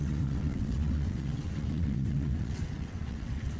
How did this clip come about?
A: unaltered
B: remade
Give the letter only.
B